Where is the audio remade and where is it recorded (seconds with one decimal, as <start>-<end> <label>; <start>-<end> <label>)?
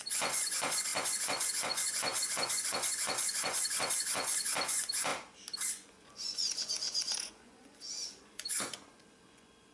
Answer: 0.0-5.1 remade; 5.1-5.7 recorded; 5.7-9.7 remade